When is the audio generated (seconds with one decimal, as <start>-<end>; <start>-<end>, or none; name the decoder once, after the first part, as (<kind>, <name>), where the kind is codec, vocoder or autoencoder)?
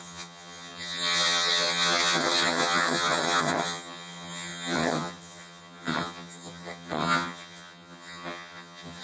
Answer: 0.0-9.0 (vocoder, HiFi-GAN)